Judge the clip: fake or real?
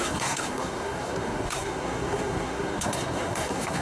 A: fake